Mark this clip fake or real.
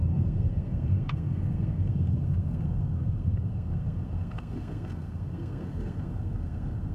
fake